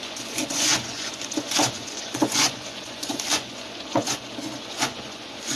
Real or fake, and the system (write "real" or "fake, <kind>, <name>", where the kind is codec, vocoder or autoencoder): fake, vocoder, Vocos